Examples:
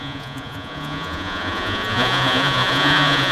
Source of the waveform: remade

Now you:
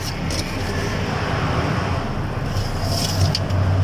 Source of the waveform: recorded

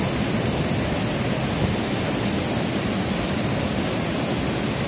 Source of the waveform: recorded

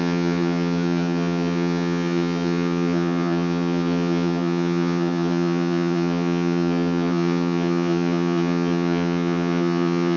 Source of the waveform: remade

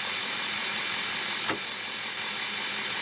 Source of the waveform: recorded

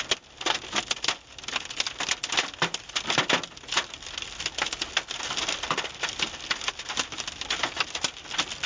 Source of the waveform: recorded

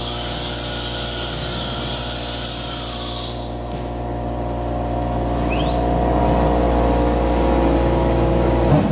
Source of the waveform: recorded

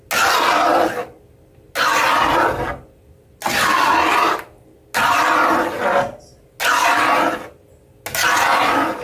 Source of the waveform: recorded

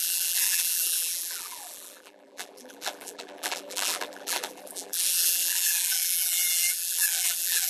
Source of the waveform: remade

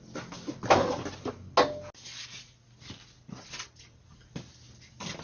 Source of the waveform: recorded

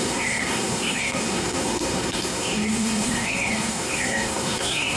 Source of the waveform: remade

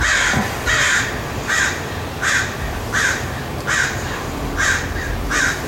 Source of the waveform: remade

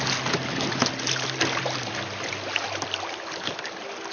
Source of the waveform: recorded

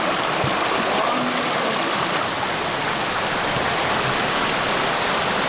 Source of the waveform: recorded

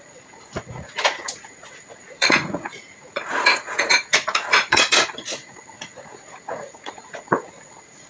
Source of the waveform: remade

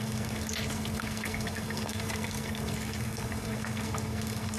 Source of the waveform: remade